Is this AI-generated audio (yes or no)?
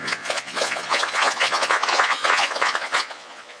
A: yes